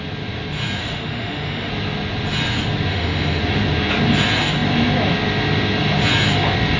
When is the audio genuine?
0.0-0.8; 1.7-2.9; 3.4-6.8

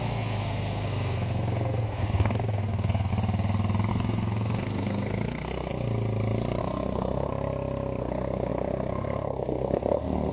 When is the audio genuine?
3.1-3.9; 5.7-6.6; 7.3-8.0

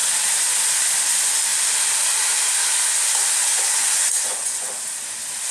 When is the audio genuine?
0.0-3.4; 4.7-5.5

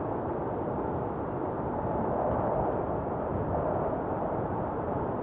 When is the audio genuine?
0.0-5.2